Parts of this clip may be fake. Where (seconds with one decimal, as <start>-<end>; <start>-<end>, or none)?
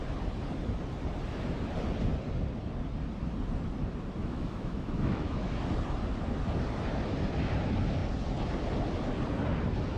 4.2-5.5